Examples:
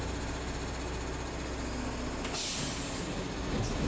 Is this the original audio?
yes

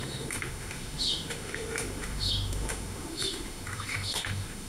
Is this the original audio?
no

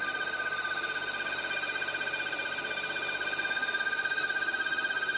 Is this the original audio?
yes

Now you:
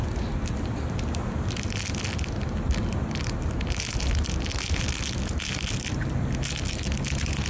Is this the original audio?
yes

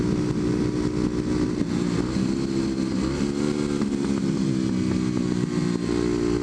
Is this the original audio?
yes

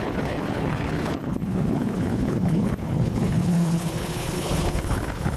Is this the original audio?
no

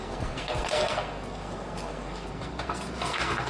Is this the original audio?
no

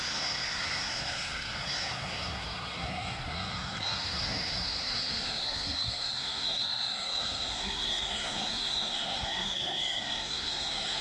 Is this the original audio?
no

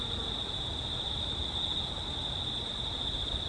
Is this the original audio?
yes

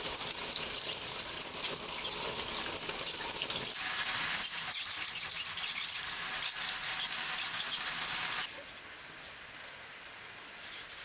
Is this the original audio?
yes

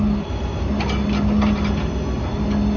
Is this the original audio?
yes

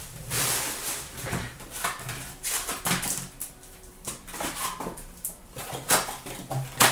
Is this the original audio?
no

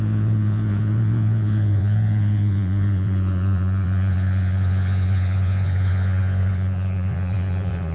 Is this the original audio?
no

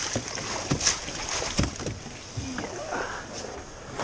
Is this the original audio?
yes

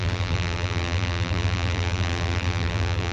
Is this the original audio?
no